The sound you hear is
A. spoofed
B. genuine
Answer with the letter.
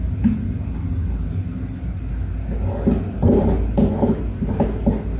B